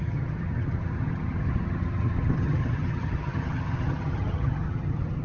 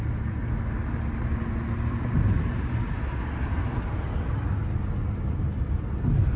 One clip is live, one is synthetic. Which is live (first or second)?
second